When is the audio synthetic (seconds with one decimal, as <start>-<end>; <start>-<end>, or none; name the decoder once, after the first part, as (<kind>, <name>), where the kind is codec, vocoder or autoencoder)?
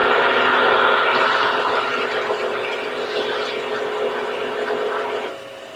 none